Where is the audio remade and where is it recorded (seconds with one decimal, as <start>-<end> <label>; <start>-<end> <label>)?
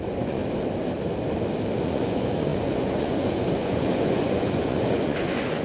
0.0-0.4 remade; 0.4-1.8 recorded; 1.8-5.6 remade